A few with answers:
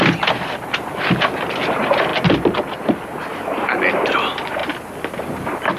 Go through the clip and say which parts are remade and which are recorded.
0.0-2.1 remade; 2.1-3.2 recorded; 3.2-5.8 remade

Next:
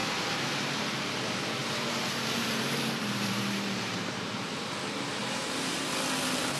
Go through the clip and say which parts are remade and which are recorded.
0.0-0.8 remade; 0.8-1.6 recorded; 1.6-4.6 remade; 4.6-5.2 recorded; 5.2-5.9 remade; 5.9-6.6 recorded

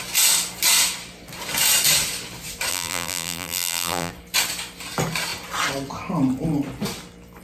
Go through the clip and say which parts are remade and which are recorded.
0.0-2.7 recorded; 2.7-4.1 remade; 4.1-7.4 recorded

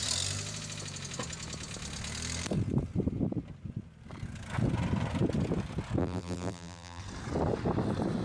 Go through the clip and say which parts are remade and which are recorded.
0.0-6.0 recorded; 6.0-7.0 remade; 7.0-8.2 recorded

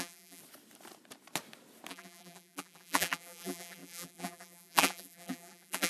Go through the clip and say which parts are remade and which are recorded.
0.0-0.4 remade; 0.4-1.9 recorded; 1.9-5.9 remade